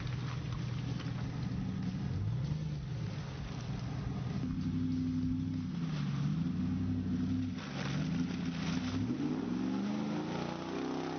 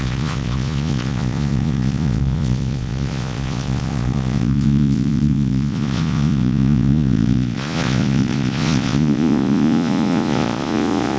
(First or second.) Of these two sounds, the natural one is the first